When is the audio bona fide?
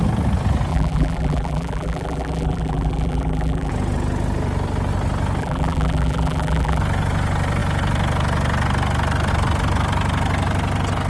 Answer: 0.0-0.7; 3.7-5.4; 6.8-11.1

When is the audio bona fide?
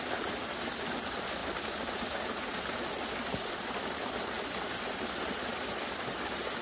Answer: 0.0-6.6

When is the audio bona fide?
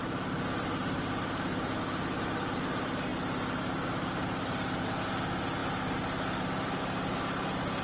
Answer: 0.0-7.8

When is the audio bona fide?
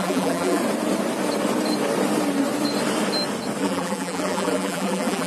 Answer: 0.6-3.6